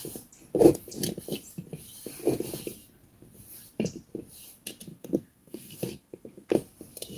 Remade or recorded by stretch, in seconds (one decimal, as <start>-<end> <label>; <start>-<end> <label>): 0.0-4.9 recorded; 4.9-6.5 remade; 6.5-7.2 recorded